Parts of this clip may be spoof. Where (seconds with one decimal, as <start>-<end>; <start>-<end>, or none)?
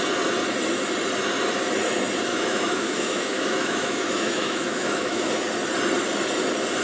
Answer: 2.3-5.3